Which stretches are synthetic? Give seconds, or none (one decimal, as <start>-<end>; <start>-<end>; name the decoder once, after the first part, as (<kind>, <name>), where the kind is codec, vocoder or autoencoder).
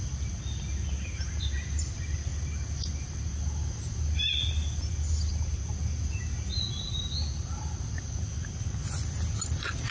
none